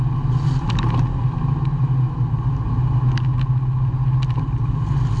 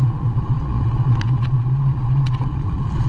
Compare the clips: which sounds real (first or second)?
first